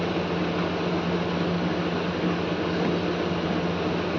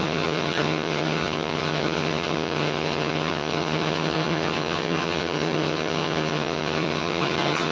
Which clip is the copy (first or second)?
second